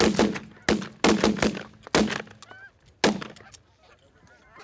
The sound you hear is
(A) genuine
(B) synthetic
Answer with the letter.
A